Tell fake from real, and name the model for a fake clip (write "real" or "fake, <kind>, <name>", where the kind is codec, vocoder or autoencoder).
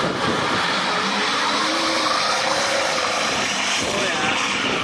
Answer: fake, vocoder, BigVGAN v2